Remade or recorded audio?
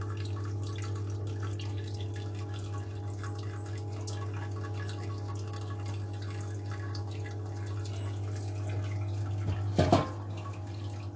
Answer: recorded